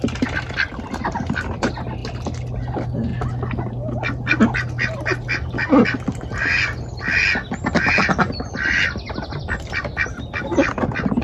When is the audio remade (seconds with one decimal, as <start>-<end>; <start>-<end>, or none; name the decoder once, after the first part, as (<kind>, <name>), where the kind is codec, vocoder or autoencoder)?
none